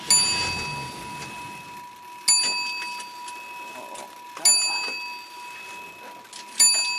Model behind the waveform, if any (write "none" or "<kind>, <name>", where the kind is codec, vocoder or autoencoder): none